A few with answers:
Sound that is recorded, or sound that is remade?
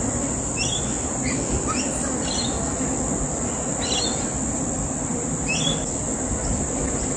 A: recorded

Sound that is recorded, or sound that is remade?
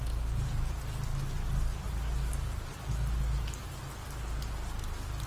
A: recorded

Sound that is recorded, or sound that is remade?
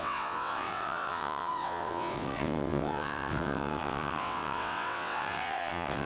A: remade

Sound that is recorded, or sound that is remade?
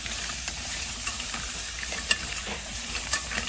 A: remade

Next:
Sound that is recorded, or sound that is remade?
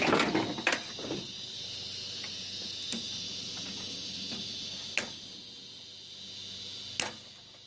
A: recorded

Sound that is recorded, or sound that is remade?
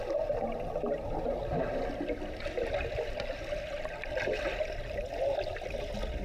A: recorded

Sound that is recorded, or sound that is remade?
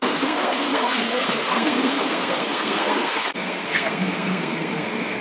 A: remade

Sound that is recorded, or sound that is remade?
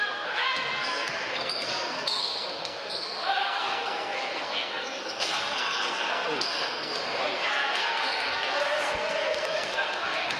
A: remade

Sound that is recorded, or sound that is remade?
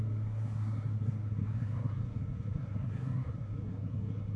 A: remade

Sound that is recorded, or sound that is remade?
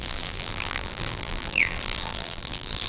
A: remade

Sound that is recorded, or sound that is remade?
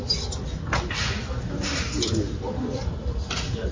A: recorded